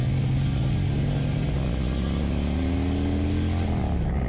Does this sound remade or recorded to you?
recorded